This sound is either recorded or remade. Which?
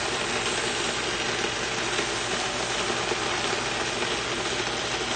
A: recorded